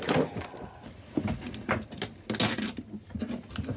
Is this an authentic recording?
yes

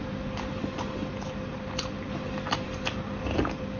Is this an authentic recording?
yes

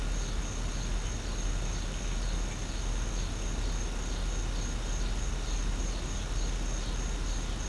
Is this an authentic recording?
yes